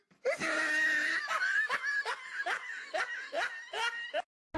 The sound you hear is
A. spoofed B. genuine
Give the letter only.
B